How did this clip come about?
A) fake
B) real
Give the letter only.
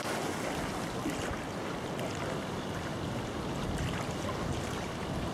B